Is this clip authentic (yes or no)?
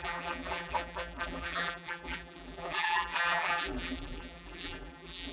no